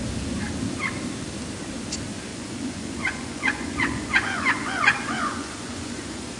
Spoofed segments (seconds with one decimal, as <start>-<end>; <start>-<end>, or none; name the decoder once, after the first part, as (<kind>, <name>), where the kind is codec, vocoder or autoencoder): 2.3-6.4 (vocoder, Vocos)